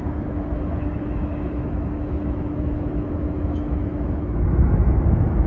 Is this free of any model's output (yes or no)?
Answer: no